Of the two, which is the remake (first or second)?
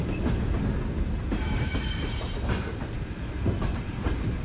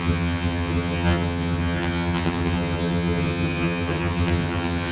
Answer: second